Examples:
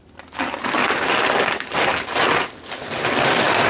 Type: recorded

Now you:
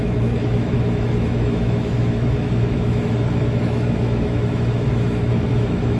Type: remade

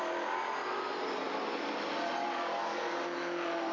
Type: recorded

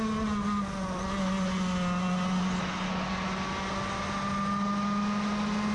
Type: recorded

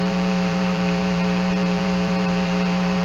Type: remade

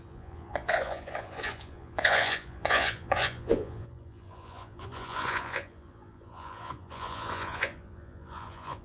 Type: remade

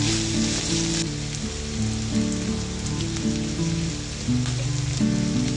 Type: recorded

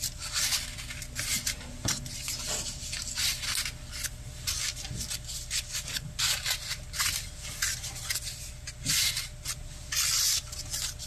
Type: recorded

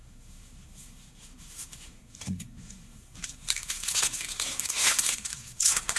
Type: remade